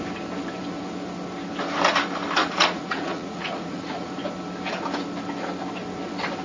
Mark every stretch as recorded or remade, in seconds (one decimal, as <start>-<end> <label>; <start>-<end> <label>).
0.0-2.4 recorded; 2.4-4.1 remade; 4.1-6.4 recorded